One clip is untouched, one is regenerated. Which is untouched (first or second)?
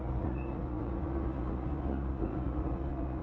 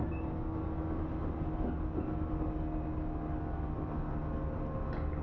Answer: second